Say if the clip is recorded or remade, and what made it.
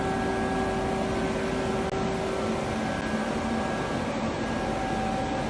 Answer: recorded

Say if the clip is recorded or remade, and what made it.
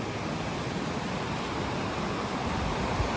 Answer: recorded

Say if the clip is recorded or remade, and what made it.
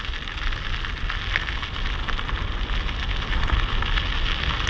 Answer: recorded